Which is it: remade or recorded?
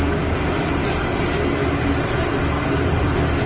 recorded